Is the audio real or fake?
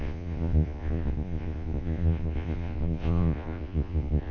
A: fake